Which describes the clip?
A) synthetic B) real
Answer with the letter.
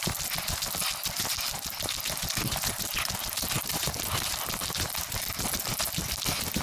B